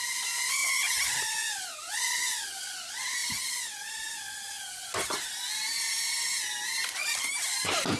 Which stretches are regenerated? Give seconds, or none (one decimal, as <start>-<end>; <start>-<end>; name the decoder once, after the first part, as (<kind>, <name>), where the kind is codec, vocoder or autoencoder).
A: none